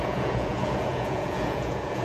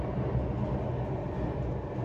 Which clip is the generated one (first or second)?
first